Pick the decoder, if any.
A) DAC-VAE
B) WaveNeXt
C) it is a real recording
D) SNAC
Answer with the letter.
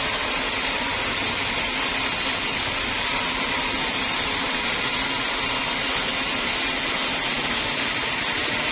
C